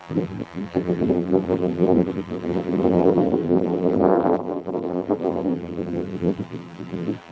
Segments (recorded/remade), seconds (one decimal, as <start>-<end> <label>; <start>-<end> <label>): 0.0-7.3 remade